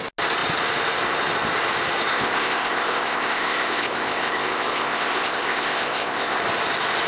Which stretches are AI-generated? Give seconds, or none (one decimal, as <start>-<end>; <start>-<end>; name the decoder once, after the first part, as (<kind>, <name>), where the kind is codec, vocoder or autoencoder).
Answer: 2.1-6.4 (codec, ZipCodec)